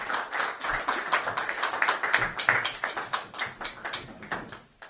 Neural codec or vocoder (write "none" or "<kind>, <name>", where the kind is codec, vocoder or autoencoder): none